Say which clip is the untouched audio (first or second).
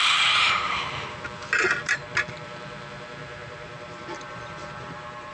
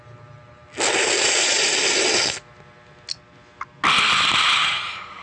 second